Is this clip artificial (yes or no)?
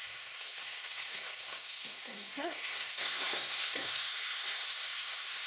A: yes